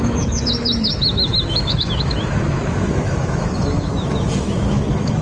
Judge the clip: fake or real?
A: fake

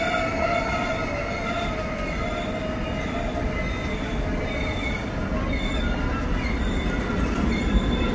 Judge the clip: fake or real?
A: real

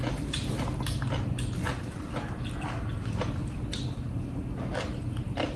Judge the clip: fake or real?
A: real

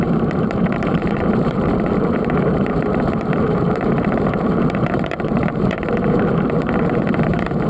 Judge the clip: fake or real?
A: fake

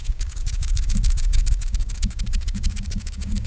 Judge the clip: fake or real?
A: fake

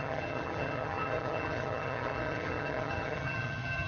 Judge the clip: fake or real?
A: fake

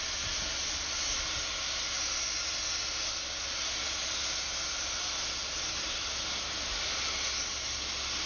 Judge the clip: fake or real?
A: real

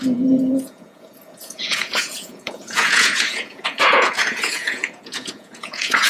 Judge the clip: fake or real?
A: fake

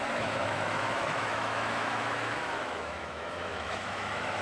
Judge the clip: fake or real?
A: fake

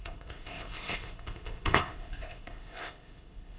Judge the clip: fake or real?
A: fake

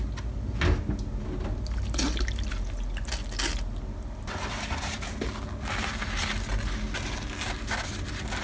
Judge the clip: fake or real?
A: real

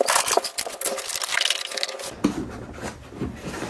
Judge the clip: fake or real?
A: real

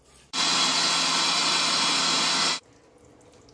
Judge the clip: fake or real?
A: real